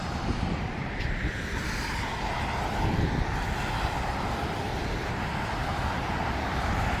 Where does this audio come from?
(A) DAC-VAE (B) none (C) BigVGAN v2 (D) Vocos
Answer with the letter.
C